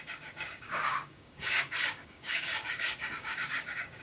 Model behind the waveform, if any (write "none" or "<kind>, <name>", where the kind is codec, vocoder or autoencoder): codec, DAC